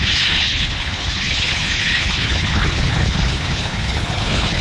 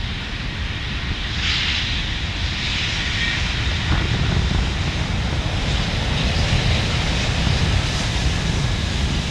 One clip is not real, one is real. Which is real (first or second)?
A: second